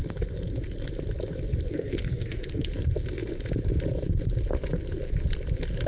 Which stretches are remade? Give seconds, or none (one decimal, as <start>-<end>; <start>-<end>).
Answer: 1.7-2.7